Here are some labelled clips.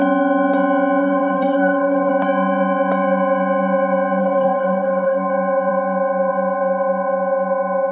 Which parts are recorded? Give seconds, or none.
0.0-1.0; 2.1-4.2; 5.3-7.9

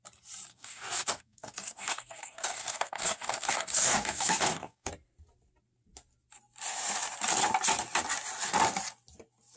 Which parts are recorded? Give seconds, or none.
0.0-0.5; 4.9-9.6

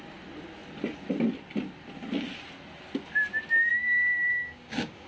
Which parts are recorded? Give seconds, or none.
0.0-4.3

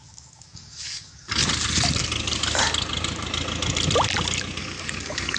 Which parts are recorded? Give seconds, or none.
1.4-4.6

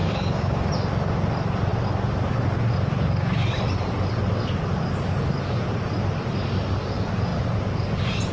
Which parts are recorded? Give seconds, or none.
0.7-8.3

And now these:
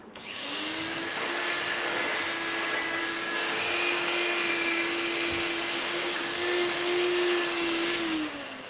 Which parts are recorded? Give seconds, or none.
2.0-3.0

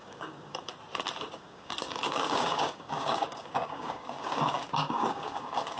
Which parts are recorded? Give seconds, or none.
0.7-1.3